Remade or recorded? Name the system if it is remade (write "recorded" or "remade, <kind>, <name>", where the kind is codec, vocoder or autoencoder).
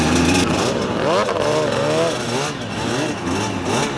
recorded